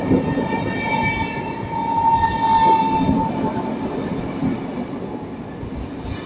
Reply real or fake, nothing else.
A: real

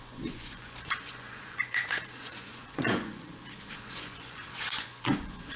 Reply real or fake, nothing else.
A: fake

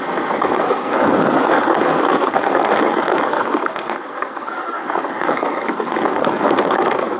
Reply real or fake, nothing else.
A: fake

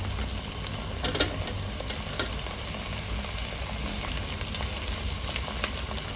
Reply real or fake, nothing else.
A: real